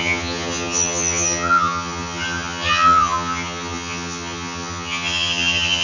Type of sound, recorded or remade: remade